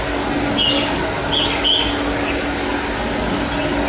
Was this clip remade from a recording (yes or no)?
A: no